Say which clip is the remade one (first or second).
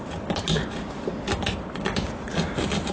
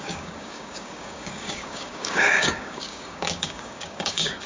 second